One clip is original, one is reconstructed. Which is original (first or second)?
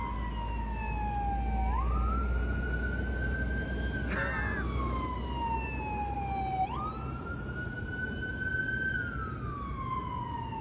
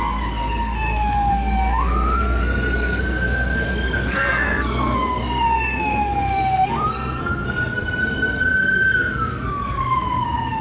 first